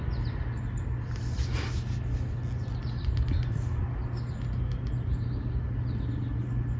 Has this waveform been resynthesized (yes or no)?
no